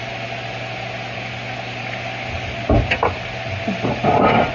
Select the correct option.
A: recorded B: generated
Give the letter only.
A